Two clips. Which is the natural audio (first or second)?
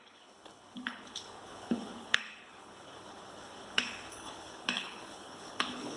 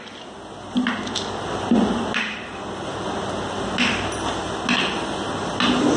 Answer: second